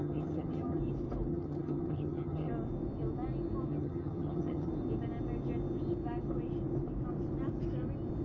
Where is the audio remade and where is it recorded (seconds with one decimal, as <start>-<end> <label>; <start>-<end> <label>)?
0.0-0.8 remade; 0.8-1.3 recorded; 1.3-2.5 remade; 2.5-3.7 recorded; 3.7-4.7 remade; 4.7-8.2 recorded